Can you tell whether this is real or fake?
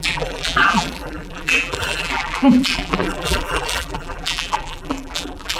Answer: fake